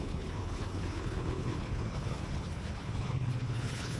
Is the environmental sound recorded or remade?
remade